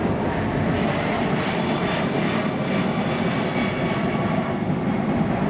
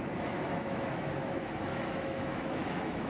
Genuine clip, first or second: first